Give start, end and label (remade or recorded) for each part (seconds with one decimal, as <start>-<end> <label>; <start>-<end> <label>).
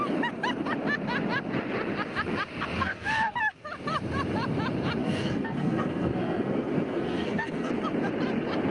0.0-2.8 recorded; 2.8-3.4 remade; 3.4-5.0 recorded; 5.0-7.7 remade; 7.7-8.7 recorded